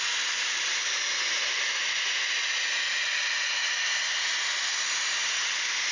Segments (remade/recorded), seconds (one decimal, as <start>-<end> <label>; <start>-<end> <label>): 0.0-5.9 recorded